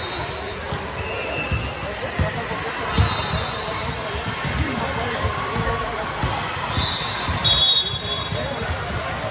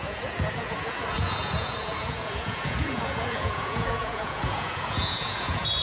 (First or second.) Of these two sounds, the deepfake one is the second